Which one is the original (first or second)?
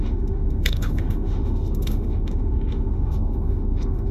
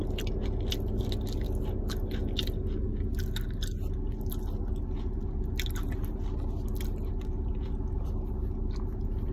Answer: second